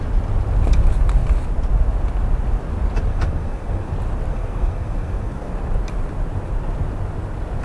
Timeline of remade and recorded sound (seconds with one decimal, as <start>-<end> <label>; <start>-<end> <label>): 0.0-3.1 recorded; 3.1-3.9 remade; 3.9-4.3 recorded; 4.3-5.5 remade; 5.5-7.6 recorded